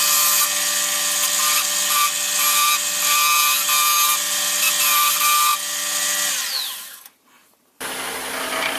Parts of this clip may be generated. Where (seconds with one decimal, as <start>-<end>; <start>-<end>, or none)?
none